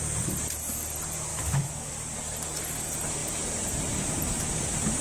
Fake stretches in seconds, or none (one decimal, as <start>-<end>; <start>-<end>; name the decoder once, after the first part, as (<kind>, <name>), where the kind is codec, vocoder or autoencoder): 1.3-1.9 (autoencoder, DAC-VAE)